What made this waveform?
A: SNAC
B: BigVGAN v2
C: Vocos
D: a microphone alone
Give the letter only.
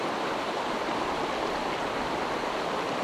D